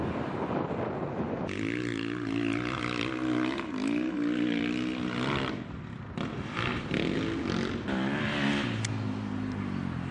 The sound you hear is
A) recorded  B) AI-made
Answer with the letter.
A